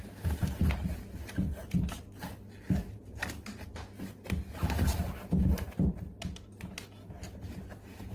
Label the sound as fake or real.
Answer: real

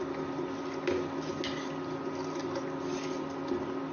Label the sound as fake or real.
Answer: real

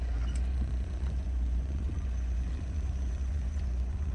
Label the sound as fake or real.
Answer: fake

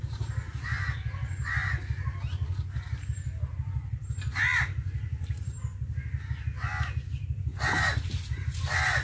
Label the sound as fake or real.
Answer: real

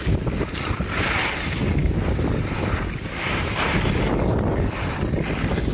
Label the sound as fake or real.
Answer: real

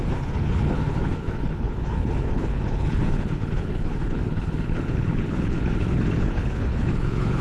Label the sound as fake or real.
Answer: fake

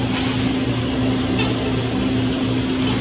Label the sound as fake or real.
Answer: real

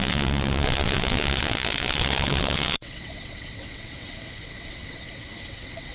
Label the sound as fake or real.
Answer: fake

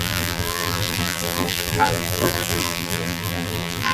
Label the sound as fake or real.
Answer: fake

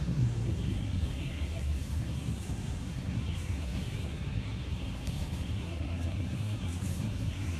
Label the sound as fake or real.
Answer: fake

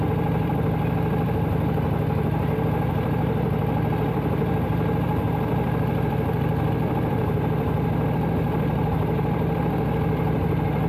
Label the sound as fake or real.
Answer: real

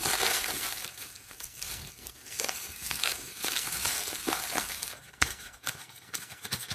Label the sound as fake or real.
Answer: fake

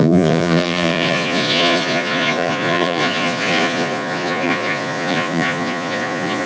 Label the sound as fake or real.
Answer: fake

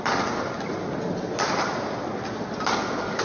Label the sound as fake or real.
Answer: real